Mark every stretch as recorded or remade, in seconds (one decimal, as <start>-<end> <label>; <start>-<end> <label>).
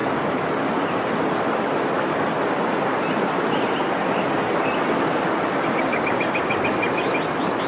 0.0-7.7 recorded